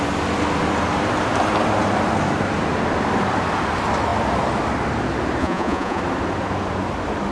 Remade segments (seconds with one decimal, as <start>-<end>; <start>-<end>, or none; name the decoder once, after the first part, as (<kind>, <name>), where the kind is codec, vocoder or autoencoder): 5.4-6.0 (vocoder, Vocos)